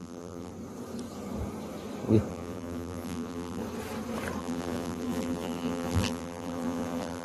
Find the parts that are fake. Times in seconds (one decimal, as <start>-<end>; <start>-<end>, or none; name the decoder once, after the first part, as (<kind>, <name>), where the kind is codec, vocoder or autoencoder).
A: 0.0-0.5 (vocoder, BigVGAN v2); 2.3-3.6; 4.4-7.2